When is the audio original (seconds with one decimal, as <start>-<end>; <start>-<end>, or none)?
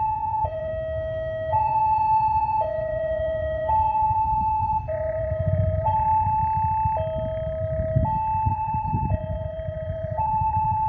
0.7-1.5; 6.4-8.5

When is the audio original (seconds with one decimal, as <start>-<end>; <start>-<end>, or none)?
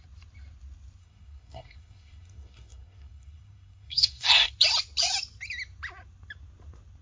0.0-1.0; 4.5-7.0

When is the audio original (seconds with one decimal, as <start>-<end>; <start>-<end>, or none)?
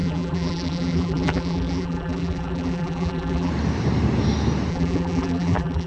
3.5-4.7